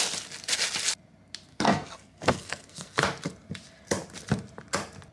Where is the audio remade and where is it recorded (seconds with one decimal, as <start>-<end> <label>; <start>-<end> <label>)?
0.0-1.5 recorded; 1.5-3.0 remade; 3.0-5.1 recorded